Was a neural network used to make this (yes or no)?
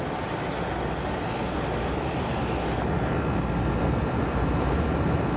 no